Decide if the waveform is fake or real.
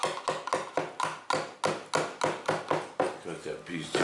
real